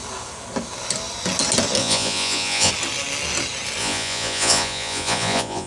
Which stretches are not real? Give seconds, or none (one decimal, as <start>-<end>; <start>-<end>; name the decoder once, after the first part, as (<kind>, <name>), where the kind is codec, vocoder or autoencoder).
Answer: 1.8-2.7 (vocoder, Vocos); 3.8-5.7